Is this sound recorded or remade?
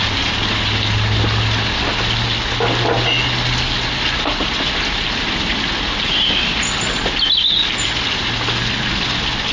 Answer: recorded